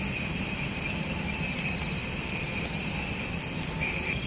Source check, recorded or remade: recorded